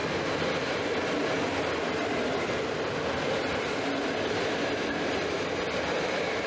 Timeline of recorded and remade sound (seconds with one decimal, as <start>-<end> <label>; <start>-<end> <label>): 0.0-6.5 recorded